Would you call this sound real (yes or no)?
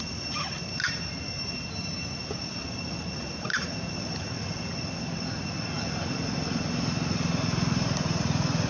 yes